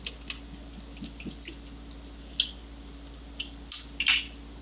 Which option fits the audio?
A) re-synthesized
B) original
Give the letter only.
B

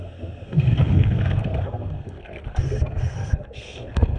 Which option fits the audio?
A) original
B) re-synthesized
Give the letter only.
B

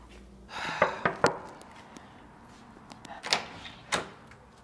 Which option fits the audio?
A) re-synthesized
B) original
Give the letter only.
B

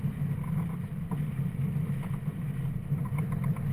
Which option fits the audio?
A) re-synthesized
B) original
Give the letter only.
B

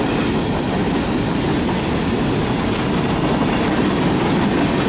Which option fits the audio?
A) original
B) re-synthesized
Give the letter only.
A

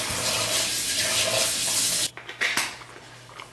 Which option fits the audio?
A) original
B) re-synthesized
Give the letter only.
A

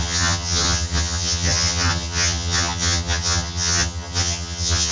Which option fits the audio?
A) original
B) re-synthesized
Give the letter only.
B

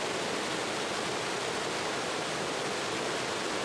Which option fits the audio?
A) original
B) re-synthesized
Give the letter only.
A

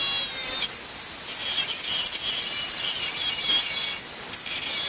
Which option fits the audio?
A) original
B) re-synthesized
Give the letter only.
A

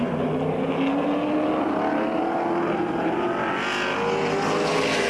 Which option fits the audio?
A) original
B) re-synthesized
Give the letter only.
A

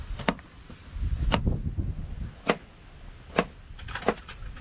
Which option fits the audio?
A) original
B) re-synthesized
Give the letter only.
A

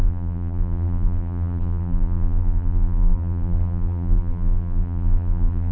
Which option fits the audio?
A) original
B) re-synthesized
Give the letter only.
B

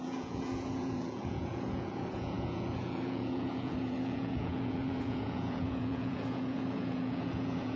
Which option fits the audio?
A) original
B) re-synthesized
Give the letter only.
B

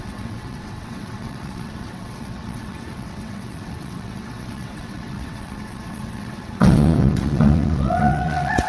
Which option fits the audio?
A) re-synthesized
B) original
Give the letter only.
A